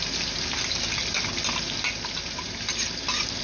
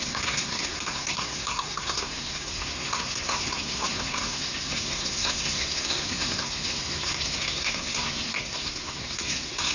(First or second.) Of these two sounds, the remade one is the second